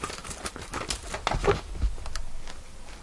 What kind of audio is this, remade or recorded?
recorded